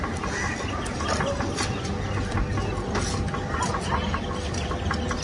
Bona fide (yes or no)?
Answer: yes